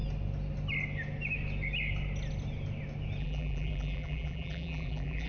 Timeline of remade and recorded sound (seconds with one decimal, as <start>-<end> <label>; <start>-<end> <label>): 0.0-3.2 recorded; 3.2-5.3 remade